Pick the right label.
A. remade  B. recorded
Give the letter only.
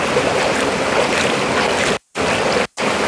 B